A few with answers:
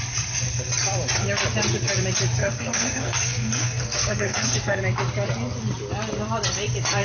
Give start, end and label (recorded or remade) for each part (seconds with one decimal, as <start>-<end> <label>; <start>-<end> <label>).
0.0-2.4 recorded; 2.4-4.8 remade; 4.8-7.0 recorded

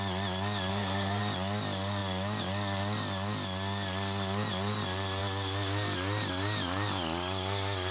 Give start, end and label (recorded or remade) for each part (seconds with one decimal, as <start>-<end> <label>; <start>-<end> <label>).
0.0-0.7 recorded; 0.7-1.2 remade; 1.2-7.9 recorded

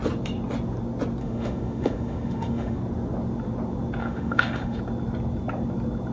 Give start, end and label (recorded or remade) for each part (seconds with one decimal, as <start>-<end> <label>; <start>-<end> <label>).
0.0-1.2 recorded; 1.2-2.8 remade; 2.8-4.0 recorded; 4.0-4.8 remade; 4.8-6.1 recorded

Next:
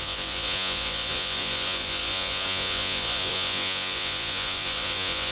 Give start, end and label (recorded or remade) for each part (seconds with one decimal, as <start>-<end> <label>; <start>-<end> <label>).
0.0-5.3 remade

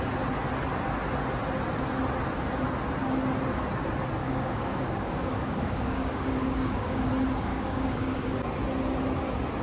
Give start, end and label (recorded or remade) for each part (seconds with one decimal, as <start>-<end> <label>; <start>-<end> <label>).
0.0-4.2 recorded; 4.2-7.1 remade; 7.1-7.5 recorded; 7.5-8.3 remade; 8.3-9.6 recorded

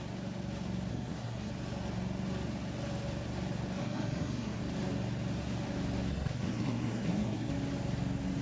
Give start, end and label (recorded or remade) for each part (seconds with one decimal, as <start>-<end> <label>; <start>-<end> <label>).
0.0-0.9 recorded; 0.9-1.5 remade; 1.5-3.8 recorded; 3.8-4.6 remade; 4.6-6.1 recorded; 6.1-7.5 remade; 7.5-8.4 recorded

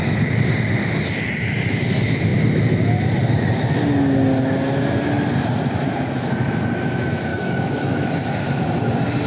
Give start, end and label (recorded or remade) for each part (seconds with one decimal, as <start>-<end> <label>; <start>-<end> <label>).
0.0-7.3 recorded; 7.3-8.1 remade; 8.1-9.3 recorded

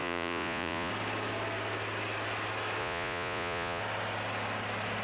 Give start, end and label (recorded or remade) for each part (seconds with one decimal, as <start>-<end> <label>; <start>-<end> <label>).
0.0-0.9 remade; 0.9-2.8 recorded; 2.8-3.8 remade; 3.8-5.0 recorded